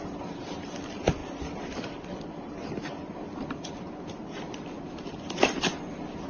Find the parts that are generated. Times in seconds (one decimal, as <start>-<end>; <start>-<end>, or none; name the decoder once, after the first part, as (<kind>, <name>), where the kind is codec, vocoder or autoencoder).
1.2-5.0 (vocoder, BigVGAN v2)

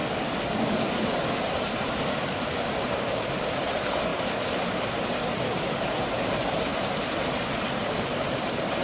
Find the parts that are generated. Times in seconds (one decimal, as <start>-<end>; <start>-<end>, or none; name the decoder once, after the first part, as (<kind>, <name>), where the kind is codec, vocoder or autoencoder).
3.6-4.1 (vocoder, BigVGAN v2); 4.9-8.8

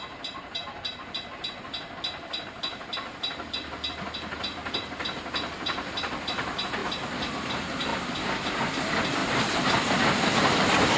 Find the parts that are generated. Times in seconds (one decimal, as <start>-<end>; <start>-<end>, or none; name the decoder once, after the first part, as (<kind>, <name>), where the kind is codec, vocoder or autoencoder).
0.0-6.8 (vocoder, BigVGAN v2); 7.3-7.9; 8.5-9.2; 10.0-11.0

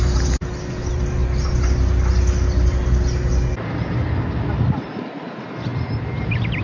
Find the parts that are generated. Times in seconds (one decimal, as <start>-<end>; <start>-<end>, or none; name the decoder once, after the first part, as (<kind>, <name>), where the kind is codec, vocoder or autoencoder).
5.7-6.6 (vocoder, BigVGAN v2)

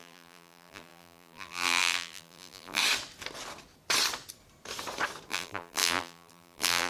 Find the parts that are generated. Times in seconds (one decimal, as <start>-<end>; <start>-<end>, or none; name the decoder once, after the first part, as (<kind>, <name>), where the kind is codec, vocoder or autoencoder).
0.0-2.8 (vocoder, BigVGAN v2); 5.3-6.9